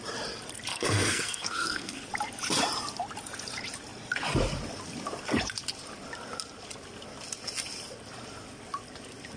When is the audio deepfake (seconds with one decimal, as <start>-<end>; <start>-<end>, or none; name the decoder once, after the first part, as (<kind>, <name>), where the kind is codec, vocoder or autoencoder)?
0.7-2.0 (codec, SNAC)